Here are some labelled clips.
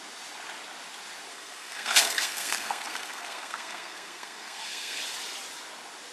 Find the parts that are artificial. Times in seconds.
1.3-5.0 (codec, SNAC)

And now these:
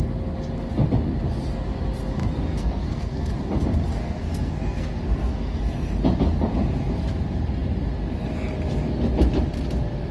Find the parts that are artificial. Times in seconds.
2.2-3.3 (codec, SNAC); 3.9-5.6

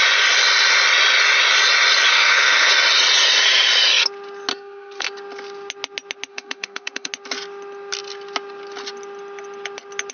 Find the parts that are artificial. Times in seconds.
2.1-2.7 (codec, SNAC); 4.5-5.1; 6.3-7.1

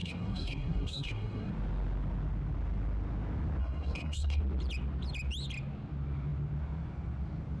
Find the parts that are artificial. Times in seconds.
0.0-1.5 (codec, SNAC); 3.6-4.4

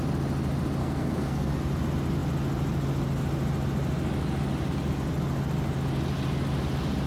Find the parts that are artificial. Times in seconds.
0.8-1.5 (codec, SNAC)